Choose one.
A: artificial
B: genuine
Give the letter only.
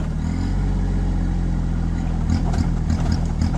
B